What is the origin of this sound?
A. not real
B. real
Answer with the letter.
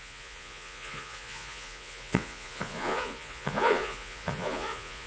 A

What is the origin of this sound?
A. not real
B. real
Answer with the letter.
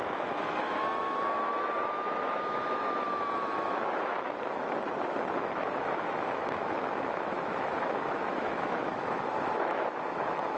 A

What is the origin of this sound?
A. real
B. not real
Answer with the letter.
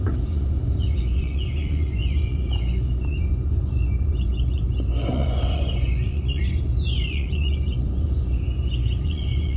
B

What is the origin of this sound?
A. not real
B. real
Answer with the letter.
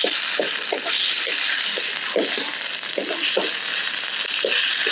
B